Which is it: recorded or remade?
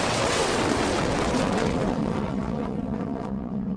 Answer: remade